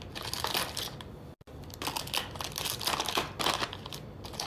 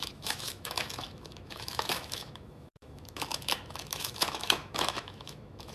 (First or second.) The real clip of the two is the first